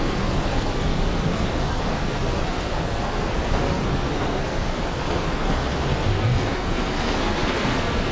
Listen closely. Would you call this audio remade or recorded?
remade